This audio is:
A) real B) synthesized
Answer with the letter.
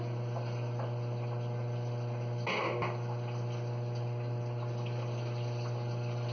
A